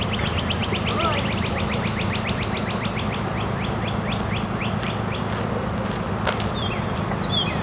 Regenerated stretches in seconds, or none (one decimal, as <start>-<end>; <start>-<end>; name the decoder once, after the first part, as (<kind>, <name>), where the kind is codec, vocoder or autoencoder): none